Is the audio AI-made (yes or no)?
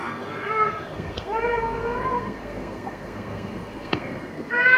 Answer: yes